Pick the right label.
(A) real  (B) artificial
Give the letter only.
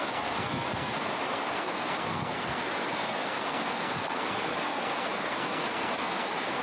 B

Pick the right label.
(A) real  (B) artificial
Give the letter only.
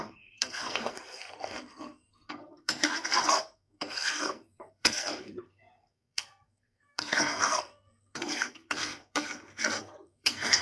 B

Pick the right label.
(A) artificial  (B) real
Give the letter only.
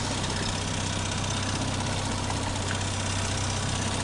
B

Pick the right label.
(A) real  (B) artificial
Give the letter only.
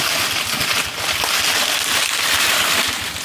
A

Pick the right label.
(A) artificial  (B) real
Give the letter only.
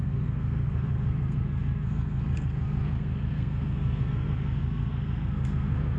A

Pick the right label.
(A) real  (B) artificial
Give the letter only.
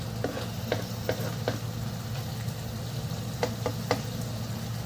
A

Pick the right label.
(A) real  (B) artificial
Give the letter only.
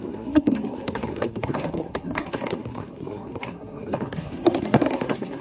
B